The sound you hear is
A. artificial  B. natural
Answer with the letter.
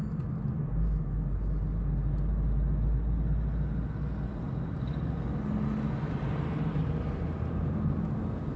B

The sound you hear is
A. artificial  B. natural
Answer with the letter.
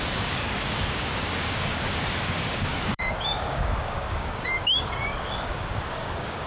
A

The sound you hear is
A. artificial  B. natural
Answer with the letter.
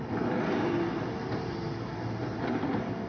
B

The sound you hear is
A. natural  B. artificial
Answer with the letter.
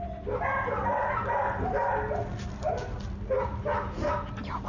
A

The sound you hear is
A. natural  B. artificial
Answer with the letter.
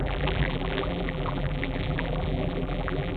B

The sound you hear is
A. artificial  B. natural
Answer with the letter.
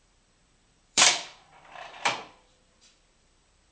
A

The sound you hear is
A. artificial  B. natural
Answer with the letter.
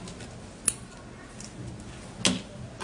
B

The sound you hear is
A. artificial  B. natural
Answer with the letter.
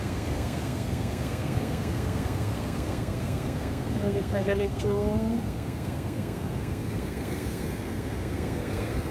A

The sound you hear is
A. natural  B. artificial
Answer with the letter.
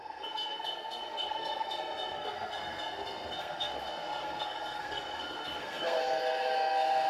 B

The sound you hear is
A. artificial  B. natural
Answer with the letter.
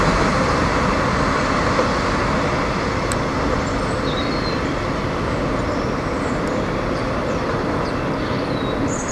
B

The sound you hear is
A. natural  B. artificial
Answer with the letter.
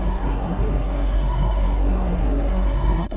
B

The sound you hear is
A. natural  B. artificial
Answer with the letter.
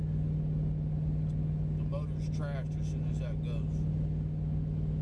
A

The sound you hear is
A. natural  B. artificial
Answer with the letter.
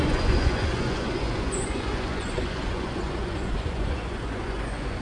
B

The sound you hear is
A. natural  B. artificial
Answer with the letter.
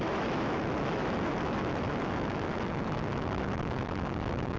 B